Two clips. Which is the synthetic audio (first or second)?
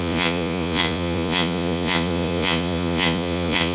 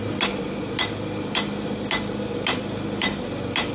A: first